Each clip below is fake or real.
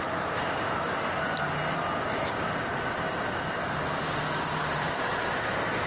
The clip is real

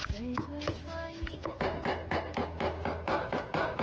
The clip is real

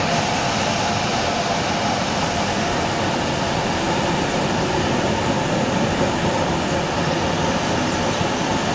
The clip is real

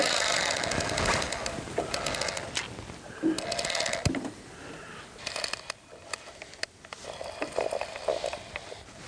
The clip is real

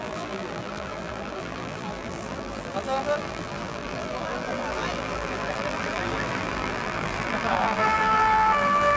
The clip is fake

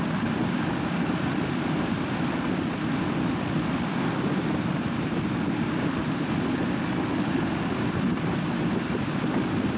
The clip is real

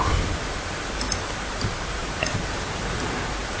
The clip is real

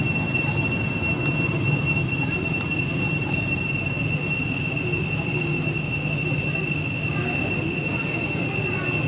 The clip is real